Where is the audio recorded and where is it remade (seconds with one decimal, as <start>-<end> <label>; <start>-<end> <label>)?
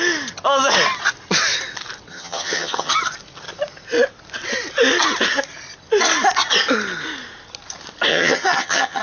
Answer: 0.0-2.1 recorded; 2.1-2.9 remade; 2.9-8.1 recorded; 8.1-9.0 remade